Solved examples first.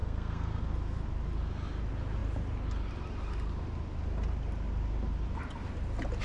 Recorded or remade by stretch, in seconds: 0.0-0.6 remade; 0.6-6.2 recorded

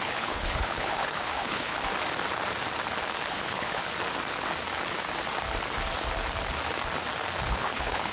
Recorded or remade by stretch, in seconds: 0.0-1.8 remade; 1.8-3.3 recorded; 3.3-3.8 remade; 3.8-7.5 recorded; 7.5-8.1 remade

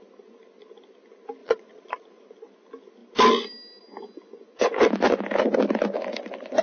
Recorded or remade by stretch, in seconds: 0.0-1.4 recorded; 1.4-2.0 remade; 2.0-6.6 recorded

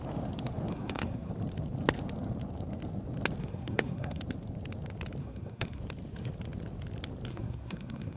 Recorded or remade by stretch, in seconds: 0.0-0.7 recorded; 0.7-1.3 remade; 1.3-3.4 recorded; 3.4-4.2 remade; 4.2-5.2 recorded; 5.2-5.8 remade; 5.8-7.3 recorded; 7.3-8.2 remade